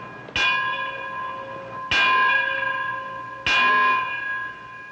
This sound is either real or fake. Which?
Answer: real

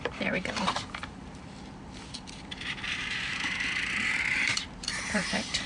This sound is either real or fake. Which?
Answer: fake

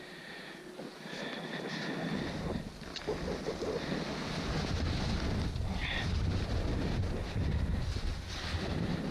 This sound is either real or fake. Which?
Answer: real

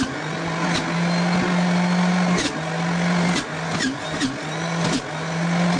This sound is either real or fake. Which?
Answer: real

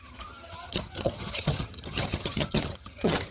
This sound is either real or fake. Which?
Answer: fake